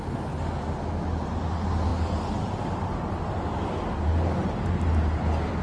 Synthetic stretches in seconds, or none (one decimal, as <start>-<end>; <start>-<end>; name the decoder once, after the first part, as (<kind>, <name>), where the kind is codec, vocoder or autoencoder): none